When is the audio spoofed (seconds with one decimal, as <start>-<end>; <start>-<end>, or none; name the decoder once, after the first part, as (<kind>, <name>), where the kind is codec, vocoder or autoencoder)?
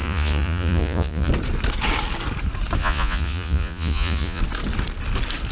0.0-1.3 (vocoder, Vocos); 2.8-4.4